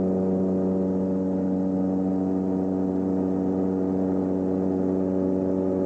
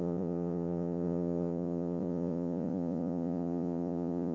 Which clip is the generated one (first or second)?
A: second